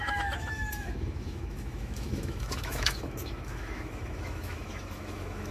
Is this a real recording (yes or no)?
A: no